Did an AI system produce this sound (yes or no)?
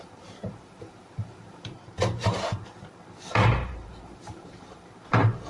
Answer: yes